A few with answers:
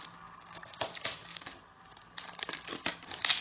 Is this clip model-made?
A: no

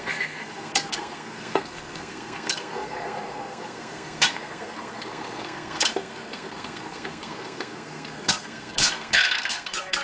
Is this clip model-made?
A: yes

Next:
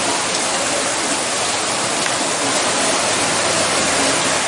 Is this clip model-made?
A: no